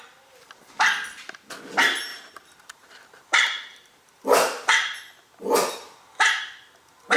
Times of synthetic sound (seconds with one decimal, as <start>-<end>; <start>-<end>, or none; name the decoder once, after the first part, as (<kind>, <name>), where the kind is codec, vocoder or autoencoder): 2.1-5.3 (vocoder, BigVGAN v2)